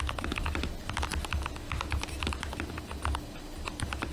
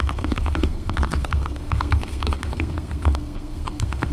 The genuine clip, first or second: first